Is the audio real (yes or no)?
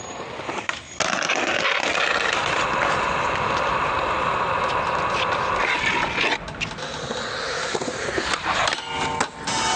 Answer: yes